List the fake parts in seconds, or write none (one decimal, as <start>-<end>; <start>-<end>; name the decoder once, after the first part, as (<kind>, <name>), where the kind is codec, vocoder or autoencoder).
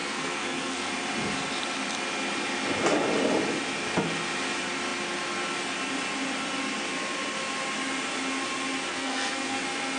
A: 0.0-0.9 (codec, SNAC); 8.9-9.6